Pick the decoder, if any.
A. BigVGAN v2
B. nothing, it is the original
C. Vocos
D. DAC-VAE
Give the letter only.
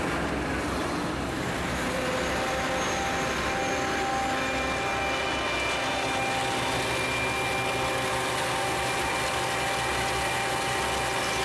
B